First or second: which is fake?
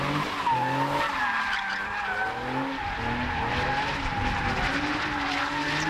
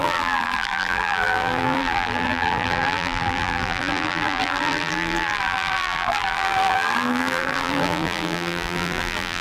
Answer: second